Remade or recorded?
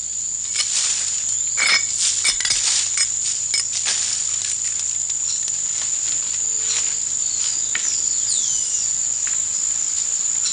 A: recorded